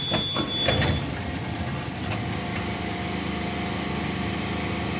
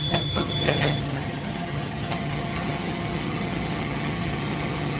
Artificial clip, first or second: second